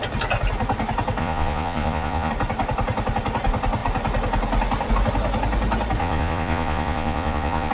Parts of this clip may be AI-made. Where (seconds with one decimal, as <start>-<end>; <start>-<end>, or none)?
1.2-2.3; 6.0-7.7